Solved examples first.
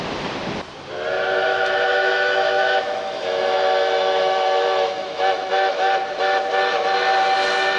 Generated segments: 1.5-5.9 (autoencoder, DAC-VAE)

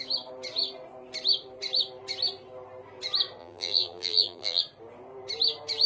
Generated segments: 3.4-4.6 (vocoder, BigVGAN v2)

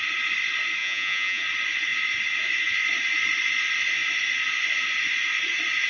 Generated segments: 0.8-1.4 (vocoder, Vocos)

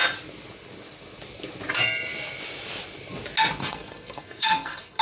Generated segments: 3.6-5.0 (codec, SNAC)

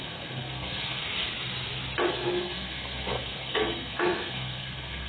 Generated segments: 0.0-1.0 (codec, SNAC); 2.1-5.1

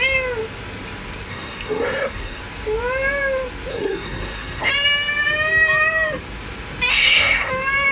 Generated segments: 1.3-2.4 (codec, SNAC); 3.7-4.7; 6.9-7.5